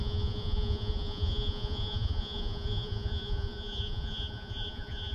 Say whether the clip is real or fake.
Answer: fake